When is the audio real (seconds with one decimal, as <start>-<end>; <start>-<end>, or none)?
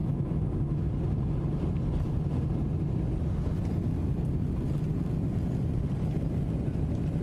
0.9-7.2